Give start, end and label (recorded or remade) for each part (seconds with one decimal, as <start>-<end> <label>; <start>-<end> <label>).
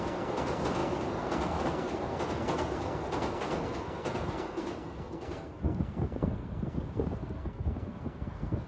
0.0-8.7 remade